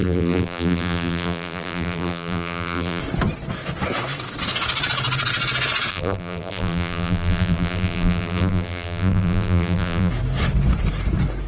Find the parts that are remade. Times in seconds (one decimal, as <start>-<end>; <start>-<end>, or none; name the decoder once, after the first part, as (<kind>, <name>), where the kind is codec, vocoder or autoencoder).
0.0-3.0 (vocoder, BigVGAN v2); 5.9-10.1